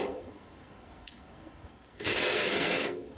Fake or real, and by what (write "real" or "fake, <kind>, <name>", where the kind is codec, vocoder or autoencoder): fake, codec, SNAC